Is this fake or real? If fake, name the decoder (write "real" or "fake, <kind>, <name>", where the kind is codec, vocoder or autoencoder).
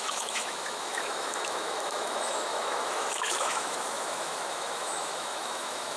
fake, autoencoder, DAC-VAE